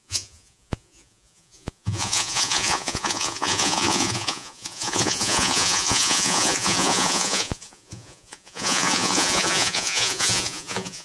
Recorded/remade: remade